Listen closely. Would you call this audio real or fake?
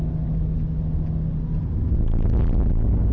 real